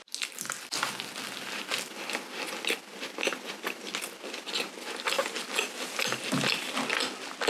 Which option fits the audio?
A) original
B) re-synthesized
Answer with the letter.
A